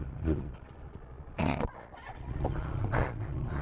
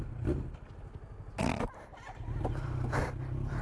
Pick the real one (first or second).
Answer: second